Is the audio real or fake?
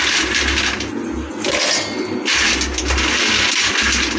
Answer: real